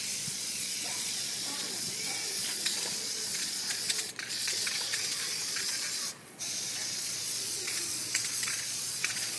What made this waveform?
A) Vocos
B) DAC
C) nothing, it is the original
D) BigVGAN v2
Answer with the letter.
A